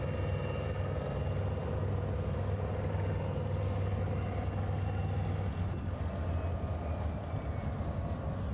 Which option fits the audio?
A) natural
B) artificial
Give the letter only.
A